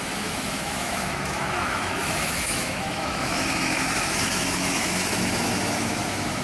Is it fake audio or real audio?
fake